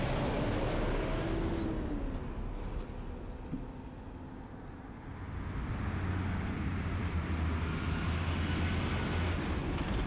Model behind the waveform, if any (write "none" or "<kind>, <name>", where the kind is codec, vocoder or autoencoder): none